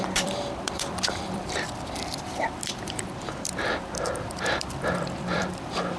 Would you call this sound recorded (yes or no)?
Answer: no